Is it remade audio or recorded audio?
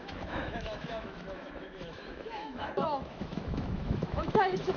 remade